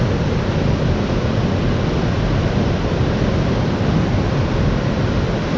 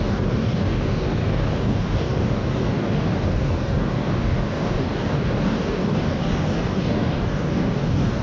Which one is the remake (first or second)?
second